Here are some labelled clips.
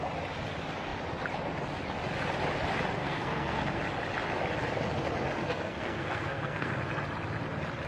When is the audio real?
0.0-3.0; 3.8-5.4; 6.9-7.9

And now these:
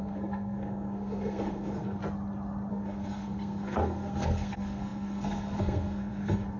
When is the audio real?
2.0-2.7

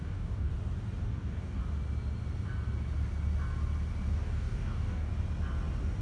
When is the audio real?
0.5-1.0; 1.6-4.1; 5.1-6.0